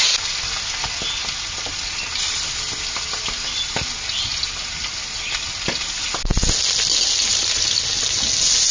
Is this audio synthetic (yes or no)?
no